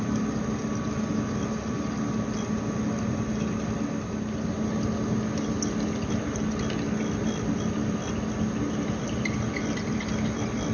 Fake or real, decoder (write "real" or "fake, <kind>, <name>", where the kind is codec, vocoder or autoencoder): real